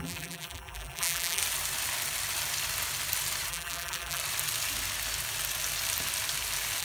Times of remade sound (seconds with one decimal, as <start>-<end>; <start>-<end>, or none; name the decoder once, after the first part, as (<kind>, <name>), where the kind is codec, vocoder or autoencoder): 0.0-1.4 (vocoder, BigVGAN v2); 3.5-4.2